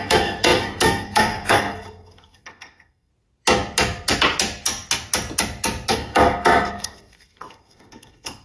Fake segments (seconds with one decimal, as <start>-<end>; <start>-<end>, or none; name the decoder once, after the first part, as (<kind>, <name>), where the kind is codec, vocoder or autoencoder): 0.0-3.1 (codec, SNAC); 5.9-8.4